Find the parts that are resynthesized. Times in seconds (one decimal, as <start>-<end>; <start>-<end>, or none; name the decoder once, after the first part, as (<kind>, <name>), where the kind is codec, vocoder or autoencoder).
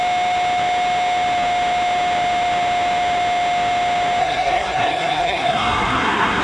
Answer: 4.2-6.4 (codec, SNAC)